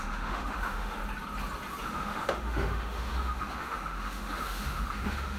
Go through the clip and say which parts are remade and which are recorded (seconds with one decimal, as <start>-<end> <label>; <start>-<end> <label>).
0.0-1.0 remade; 1.0-1.8 recorded; 1.8-5.4 remade

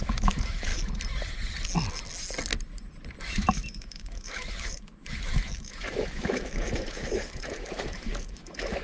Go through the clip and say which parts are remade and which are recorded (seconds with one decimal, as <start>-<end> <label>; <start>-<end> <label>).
0.0-0.7 remade; 0.7-3.2 recorded; 3.2-8.8 remade